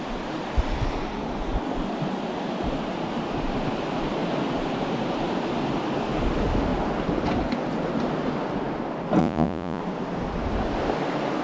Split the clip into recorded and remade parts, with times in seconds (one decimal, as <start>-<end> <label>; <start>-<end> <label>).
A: 0.0-9.2 recorded; 9.2-9.8 remade; 9.8-11.4 recorded